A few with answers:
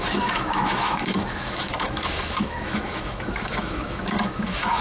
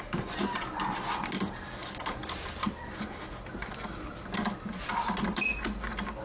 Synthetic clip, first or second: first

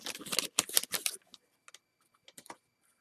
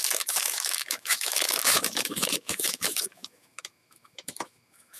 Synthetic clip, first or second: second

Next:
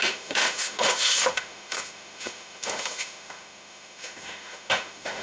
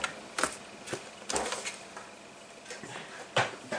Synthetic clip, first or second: first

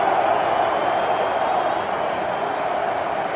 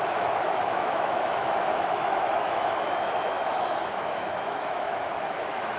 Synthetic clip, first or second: second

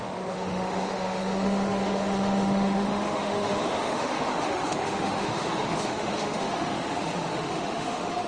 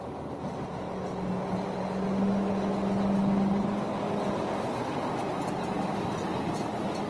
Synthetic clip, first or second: first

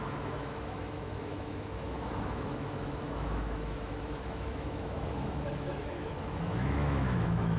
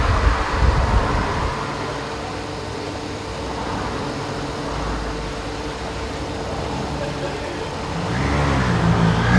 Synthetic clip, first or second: first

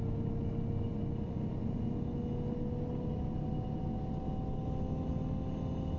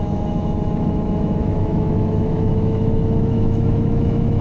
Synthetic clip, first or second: second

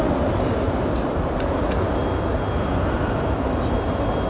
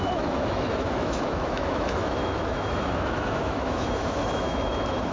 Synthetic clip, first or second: second